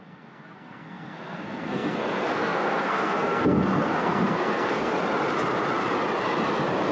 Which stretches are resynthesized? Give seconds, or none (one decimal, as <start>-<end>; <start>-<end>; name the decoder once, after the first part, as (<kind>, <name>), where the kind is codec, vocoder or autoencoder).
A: 0.0-4.9 (codec, SNAC)